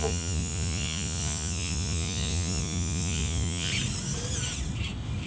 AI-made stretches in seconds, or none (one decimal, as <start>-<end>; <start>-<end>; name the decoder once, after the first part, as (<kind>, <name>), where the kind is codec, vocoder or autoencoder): 0.0-3.7 (vocoder, Vocos)